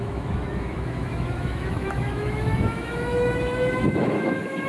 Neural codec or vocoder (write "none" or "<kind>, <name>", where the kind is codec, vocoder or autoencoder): autoencoder, DAC-VAE